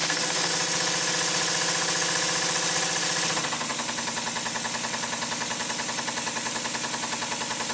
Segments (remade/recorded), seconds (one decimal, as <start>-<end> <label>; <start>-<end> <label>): 0.0-0.5 remade; 0.5-7.7 recorded